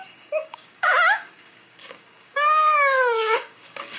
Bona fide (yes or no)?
no